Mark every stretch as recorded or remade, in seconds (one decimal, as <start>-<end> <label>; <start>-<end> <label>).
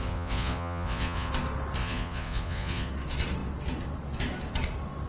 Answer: 0.0-1.3 remade; 1.3-1.8 recorded; 1.8-2.9 remade; 2.9-5.1 recorded